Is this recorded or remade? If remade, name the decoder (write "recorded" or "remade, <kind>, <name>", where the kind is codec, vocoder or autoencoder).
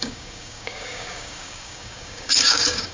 remade, codec, DAC